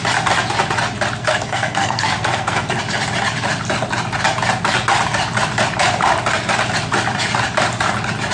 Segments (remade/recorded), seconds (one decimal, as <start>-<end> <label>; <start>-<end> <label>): 0.0-1.2 recorded; 1.2-2.8 remade; 2.8-8.3 recorded